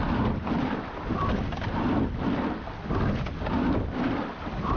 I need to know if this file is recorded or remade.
recorded